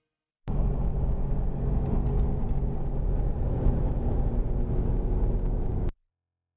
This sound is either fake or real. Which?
real